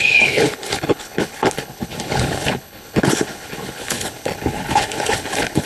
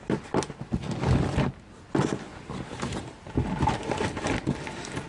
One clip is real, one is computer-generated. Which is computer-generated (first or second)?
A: first